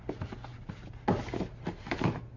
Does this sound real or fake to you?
real